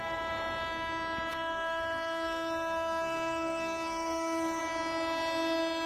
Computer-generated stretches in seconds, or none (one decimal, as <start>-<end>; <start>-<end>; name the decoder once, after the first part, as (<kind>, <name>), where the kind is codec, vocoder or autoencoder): 1.3-4.6 (codec, SNAC)